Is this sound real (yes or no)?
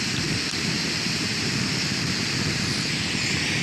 yes